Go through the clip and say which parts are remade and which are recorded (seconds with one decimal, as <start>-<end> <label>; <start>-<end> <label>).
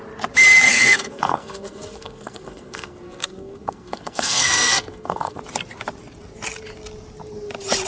0.0-0.7 recorded; 0.7-5.4 remade; 5.4-7.9 recorded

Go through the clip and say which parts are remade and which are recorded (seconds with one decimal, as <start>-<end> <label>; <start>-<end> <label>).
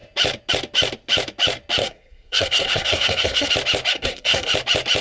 0.0-1.8 recorded; 1.8-3.5 remade; 3.5-3.9 recorded; 3.9-4.5 remade; 4.5-5.0 recorded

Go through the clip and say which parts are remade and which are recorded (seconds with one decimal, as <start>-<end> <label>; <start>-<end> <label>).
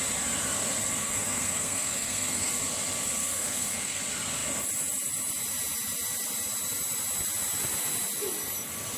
0.0-1.0 recorded; 1.0-2.5 remade; 2.5-3.2 recorded; 3.2-4.0 remade; 4.0-9.0 recorded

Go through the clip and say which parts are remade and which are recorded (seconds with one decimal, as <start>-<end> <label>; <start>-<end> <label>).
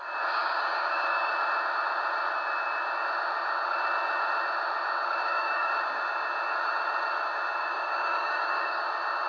0.0-0.4 recorded; 0.4-1.3 remade; 1.3-5.2 recorded; 5.2-5.7 remade; 5.7-7.6 recorded; 7.6-8.8 remade; 8.8-9.3 recorded